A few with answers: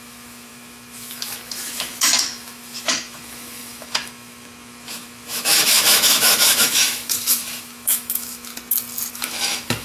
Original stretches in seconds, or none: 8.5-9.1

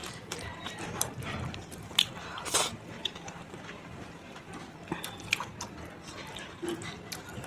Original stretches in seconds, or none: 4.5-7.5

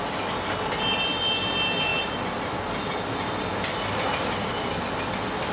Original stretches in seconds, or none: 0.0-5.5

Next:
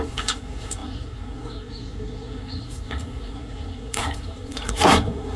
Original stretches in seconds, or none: none